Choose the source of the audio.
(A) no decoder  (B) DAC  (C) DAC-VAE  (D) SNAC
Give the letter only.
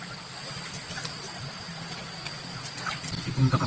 A